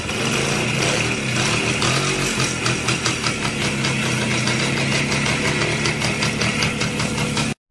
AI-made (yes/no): no